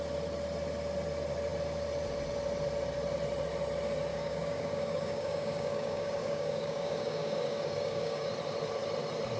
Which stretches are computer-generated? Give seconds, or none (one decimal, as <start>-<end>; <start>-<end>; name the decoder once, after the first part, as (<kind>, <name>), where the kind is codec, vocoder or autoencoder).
4.1-8.3 (codec, DAC)